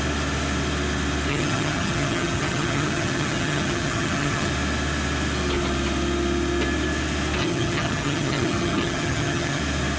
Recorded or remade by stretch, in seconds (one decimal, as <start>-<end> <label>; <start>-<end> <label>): 0.0-1.3 recorded; 1.3-4.5 remade; 4.5-7.4 recorded; 7.4-9.6 remade; 9.6-10.0 recorded